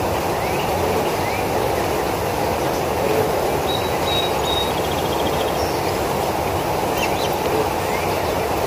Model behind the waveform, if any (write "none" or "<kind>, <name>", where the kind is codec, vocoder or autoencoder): none